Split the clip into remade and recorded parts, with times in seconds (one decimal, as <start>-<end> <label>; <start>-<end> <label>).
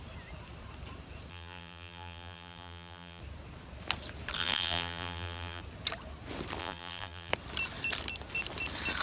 0.0-1.3 recorded; 1.3-3.2 remade; 3.2-4.4 recorded; 4.4-5.6 remade; 5.6-6.6 recorded; 6.6-7.3 remade; 7.3-9.0 recorded